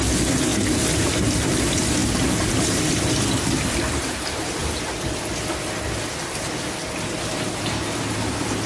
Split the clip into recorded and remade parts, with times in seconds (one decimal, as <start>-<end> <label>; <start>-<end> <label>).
0.0-0.5 recorded; 0.5-1.5 remade; 1.5-2.0 recorded; 2.0-3.8 remade; 3.8-8.7 recorded